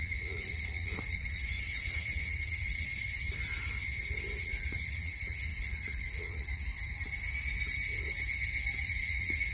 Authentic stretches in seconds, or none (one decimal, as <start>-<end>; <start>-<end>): 2.9-4.4; 6.7-8.8